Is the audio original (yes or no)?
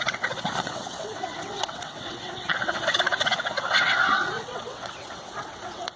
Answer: no